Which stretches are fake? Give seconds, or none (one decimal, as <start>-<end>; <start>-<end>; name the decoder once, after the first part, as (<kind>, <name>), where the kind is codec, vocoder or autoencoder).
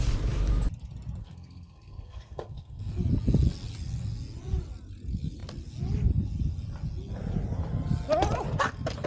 1.2-2.9 (codec, SNAC)